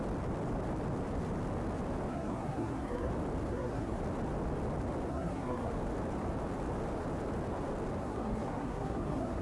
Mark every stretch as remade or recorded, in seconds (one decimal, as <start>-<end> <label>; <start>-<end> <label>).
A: 0.0-2.1 recorded; 2.1-3.1 remade; 3.1-3.5 recorded; 3.5-4.0 remade; 4.0-5.1 recorded; 5.1-5.7 remade; 5.7-8.0 recorded; 8.0-9.4 remade